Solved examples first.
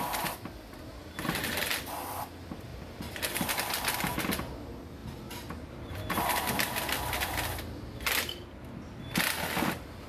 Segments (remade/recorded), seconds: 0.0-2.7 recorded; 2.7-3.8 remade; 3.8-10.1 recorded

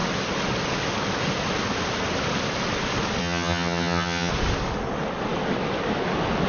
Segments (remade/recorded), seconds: 0.0-3.2 recorded; 3.2-4.3 remade; 4.3-6.5 recorded

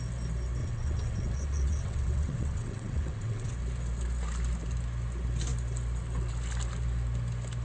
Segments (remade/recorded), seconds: 0.0-0.6 recorded; 0.6-3.5 remade; 3.5-7.6 recorded

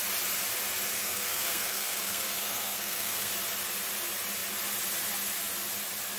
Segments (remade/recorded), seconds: 0.0-1.0 recorded; 1.0-3.3 remade; 3.3-6.2 recorded

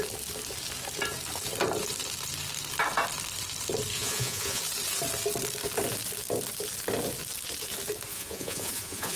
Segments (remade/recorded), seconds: 0.0-3.9 recorded; 3.9-4.6 remade; 4.6-8.1 recorded; 8.1-9.2 remade

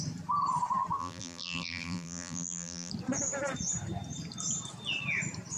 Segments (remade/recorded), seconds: 0.0-1.0 recorded; 1.0-2.9 remade; 2.9-5.6 recorded